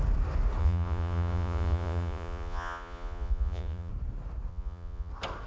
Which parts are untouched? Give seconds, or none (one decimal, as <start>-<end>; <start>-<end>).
0.0-0.6; 3.9-4.5; 5.1-5.5